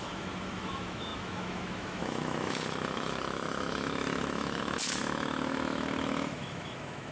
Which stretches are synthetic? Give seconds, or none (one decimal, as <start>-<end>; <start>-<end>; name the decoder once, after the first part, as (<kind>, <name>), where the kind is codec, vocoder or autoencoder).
0.0-7.1 (autoencoder, DAC-VAE)